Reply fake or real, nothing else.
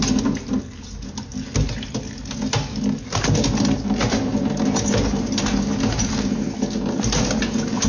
real